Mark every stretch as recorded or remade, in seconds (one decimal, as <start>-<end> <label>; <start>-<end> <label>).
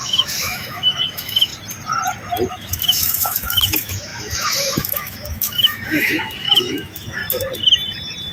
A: 0.0-1.5 remade; 1.5-2.5 recorded; 2.5-7.2 remade; 7.2-8.3 recorded